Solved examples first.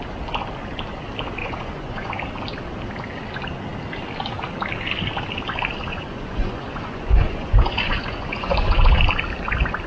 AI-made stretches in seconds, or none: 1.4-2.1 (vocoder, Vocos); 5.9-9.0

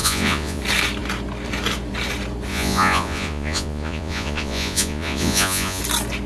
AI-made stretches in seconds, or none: 0.0-0.6 (vocoder, Vocos); 2.5-5.8

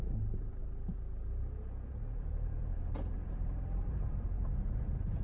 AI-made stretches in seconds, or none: 0.0-3.2 (vocoder, Vocos); 3.9-5.2

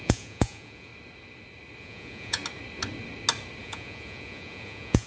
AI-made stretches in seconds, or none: 0.0-0.9 (vocoder, Vocos); 1.8-2.4; 3.6-5.1